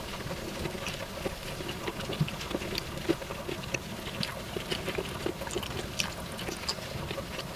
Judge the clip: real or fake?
real